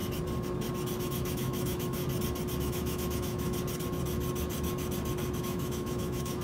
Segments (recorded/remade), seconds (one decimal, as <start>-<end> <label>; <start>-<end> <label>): 0.0-1.0 recorded; 1.0-2.0 remade; 2.0-2.6 recorded; 2.6-3.5 remade; 3.5-5.4 recorded; 5.4-6.4 remade